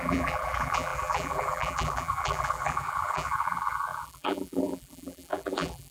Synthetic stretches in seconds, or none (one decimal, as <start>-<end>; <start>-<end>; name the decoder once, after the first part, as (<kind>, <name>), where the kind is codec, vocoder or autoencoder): 0.0-5.9 (vocoder, BigVGAN v2)